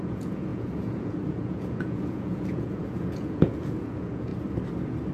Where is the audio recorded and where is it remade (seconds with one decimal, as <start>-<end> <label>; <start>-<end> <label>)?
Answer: 0.0-4.3 remade; 4.3-5.1 recorded